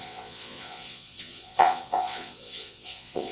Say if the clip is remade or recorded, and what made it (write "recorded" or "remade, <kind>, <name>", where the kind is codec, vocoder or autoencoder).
remade, vocoder, Vocos